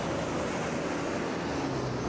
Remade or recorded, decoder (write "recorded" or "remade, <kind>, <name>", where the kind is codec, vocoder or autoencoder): recorded